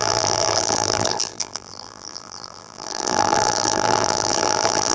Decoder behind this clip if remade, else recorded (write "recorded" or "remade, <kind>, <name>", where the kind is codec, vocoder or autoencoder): remade, vocoder, BigVGAN v2